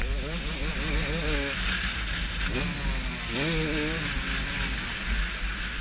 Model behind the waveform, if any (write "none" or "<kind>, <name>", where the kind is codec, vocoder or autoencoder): none